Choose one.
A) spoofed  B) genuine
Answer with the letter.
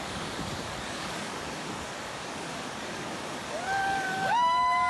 A